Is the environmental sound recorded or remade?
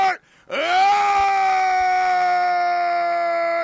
recorded